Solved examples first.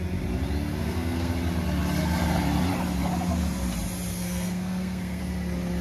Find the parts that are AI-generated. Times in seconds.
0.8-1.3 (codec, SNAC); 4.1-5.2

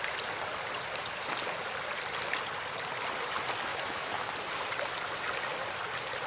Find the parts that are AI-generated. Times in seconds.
3.7-4.3 (autoencoder, DAC-VAE)